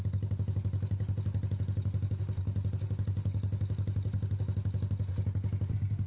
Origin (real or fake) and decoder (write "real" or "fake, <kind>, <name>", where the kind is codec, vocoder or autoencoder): real